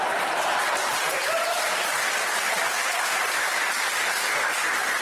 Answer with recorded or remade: recorded